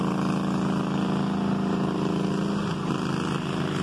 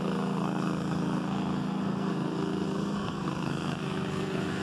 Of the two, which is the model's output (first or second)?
second